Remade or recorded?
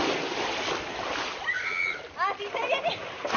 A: recorded